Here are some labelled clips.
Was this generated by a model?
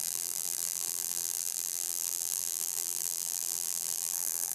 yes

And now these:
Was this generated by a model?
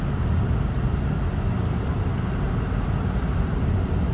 no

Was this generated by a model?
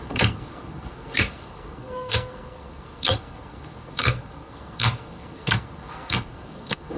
yes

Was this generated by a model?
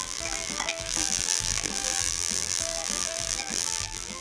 yes